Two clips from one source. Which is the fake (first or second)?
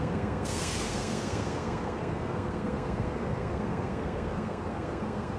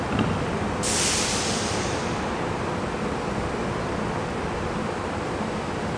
first